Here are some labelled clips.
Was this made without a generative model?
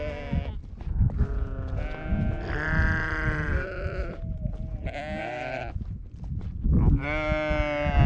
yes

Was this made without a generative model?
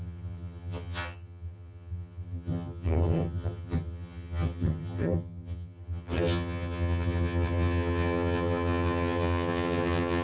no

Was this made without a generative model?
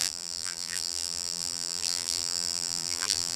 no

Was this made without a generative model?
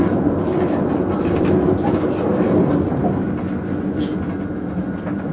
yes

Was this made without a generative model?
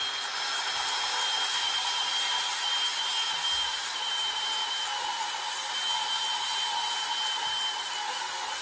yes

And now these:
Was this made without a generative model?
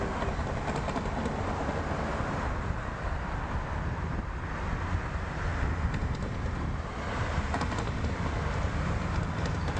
yes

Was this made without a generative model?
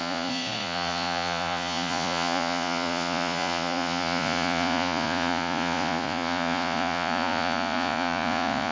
no